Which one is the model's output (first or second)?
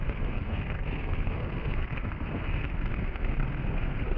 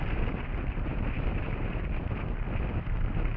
first